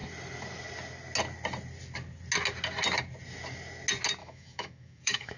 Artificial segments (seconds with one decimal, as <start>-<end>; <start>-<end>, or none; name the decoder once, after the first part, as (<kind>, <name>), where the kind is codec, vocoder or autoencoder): 4.2-5.4 (autoencoder, DAC-VAE)